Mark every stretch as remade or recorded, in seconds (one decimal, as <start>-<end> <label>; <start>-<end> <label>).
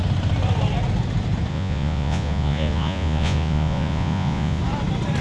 0.0-1.5 recorded; 1.5-4.6 remade; 4.6-5.2 recorded